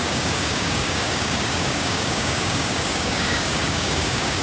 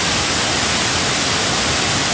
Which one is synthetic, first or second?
first